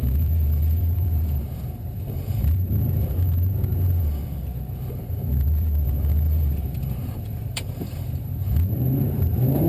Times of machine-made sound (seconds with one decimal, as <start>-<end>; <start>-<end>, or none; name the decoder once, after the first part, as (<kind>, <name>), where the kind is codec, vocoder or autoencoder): 0.0-4.2 (vocoder, BigVGAN v2); 4.9-9.7